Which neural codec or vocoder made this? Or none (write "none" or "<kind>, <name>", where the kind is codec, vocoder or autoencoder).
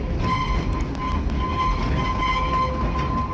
none